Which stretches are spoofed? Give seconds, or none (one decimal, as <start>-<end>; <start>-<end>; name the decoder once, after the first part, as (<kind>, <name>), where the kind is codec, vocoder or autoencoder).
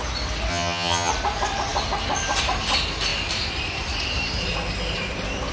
0.5-1.1 (vocoder, HiFi-GAN)